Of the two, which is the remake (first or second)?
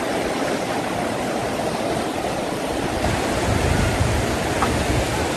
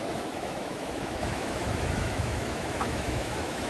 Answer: second